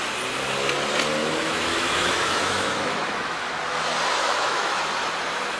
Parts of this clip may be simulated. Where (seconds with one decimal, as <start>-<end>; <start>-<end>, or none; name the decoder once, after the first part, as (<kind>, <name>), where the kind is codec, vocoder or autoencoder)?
1.2-3.5 (autoencoder, DAC-VAE); 4.2-4.8